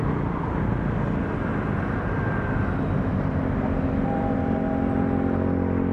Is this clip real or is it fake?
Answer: real